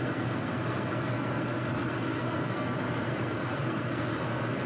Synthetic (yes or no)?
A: yes